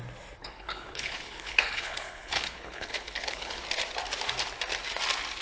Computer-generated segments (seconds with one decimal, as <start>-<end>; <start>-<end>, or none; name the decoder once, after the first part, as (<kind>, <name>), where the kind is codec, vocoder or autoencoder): 0.4-3.6 (codec, HILCodec)